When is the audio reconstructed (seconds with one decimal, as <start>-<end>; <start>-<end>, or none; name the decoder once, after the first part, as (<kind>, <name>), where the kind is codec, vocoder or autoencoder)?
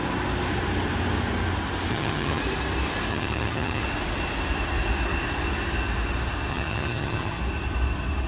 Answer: 1.9-2.4 (vocoder, HiFi-GAN); 3.1-3.8; 6.5-7.4